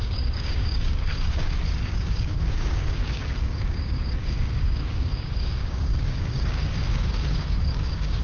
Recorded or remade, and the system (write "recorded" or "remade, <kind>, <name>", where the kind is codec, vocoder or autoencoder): remade, codec, DAC